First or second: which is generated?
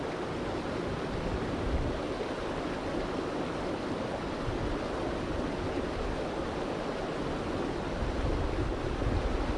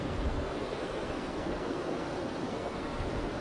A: second